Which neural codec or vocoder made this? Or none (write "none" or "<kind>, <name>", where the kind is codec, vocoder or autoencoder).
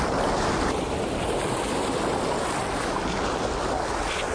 none